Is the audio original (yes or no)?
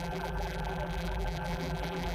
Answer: no